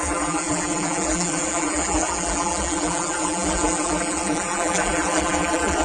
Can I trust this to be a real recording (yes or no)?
no